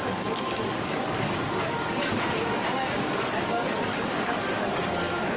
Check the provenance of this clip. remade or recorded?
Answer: remade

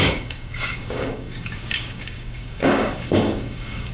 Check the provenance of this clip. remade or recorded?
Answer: remade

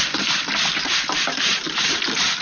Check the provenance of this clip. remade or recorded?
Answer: recorded